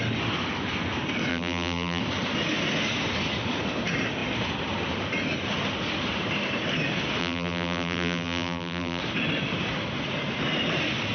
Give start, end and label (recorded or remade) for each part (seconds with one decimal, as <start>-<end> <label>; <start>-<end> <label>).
0.0-1.3 recorded; 1.3-2.0 remade; 2.0-7.2 recorded; 7.2-9.0 remade; 9.0-11.1 recorded